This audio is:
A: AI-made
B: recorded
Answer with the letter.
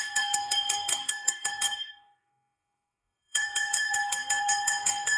A